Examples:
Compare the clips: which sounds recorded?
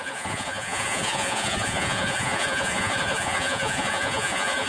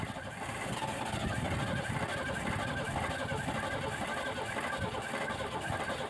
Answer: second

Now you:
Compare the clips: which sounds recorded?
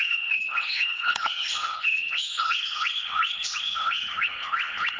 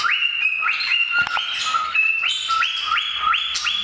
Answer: second